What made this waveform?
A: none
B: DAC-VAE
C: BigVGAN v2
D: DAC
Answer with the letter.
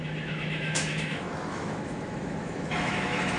B